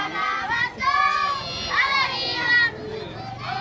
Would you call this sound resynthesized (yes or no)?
no